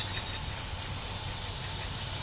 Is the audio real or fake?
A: real